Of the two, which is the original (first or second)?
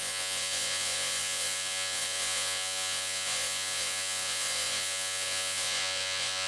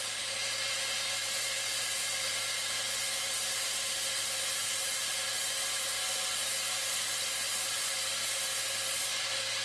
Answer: second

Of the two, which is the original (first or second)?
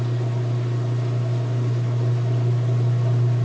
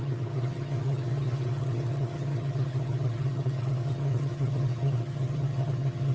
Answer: first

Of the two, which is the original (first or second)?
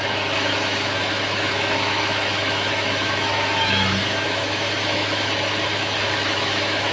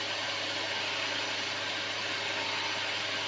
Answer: second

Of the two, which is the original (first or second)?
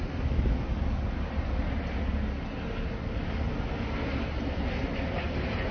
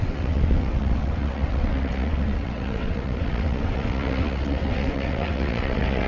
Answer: first